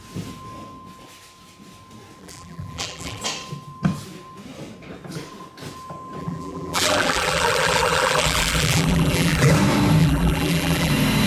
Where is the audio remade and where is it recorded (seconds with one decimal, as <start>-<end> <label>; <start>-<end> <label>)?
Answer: 0.0-2.2 recorded; 2.2-3.2 remade; 3.2-6.2 recorded; 6.2-9.5 remade; 9.5-10.0 recorded; 10.0-10.9 remade; 10.9-11.3 recorded